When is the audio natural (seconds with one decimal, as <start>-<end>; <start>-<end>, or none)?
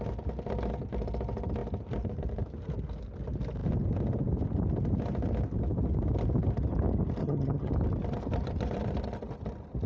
0.0-7.2; 7.7-9.9